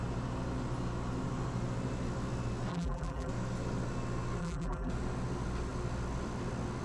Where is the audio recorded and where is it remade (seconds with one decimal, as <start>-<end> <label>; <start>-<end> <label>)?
0.0-2.7 recorded; 2.7-3.3 remade; 3.3-4.4 recorded; 4.4-4.9 remade; 4.9-6.8 recorded